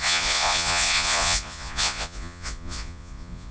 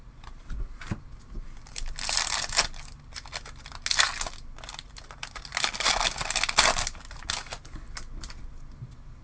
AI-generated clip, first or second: first